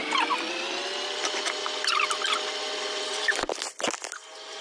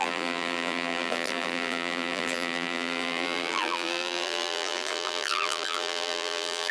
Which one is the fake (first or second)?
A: second